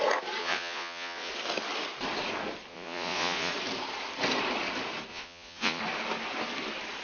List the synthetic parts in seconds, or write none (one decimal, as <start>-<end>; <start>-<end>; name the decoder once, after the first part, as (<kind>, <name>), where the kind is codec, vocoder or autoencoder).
0.4-1.3 (vocoder, Vocos); 2.7-3.5; 5.1-5.8